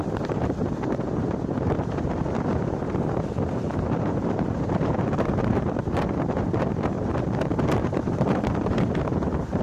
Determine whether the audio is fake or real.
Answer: fake